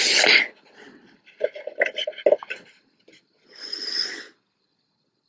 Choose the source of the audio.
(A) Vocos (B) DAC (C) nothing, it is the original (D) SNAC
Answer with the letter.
C